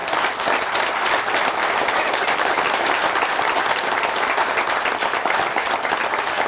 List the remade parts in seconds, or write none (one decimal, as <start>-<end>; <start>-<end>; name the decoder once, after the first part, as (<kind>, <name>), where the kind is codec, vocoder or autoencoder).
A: 0.0-2.6 (vocoder, BigVGAN v2)